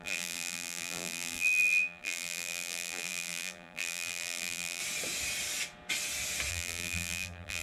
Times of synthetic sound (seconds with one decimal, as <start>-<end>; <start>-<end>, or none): 0.0-4.8; 6.5-7.6

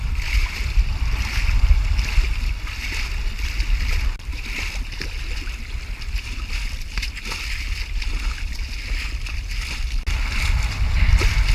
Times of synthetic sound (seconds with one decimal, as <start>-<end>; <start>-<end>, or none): none

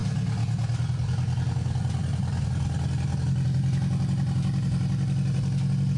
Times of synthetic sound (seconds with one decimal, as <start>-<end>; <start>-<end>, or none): none

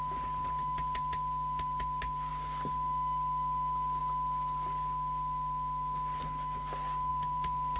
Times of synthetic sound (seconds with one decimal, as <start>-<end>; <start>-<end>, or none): 7.1-7.8

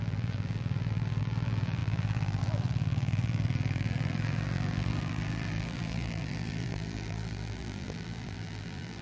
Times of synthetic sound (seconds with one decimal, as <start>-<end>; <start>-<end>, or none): 0.0-9.0

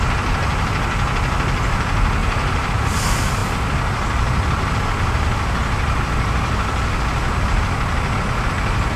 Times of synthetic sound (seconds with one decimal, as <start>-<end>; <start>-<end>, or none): 2.2-2.7